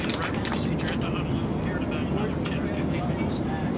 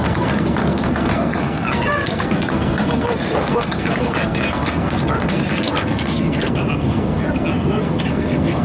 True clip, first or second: first